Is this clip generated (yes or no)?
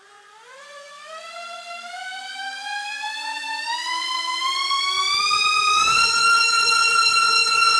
yes